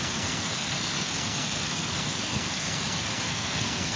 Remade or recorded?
remade